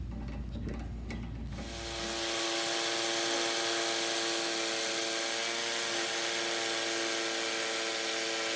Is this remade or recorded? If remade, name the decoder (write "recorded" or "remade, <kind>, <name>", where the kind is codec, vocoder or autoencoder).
recorded